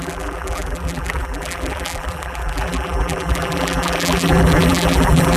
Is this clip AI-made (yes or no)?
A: yes